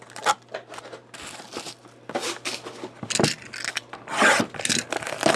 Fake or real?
real